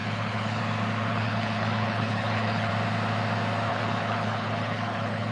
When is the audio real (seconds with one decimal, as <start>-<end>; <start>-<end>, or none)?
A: 0.6-1.1; 2.7-3.7